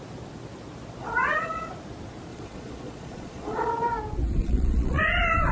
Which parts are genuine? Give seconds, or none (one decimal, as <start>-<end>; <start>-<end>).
0.0-1.0; 1.7-2.3; 3.7-4.4; 5.0-5.5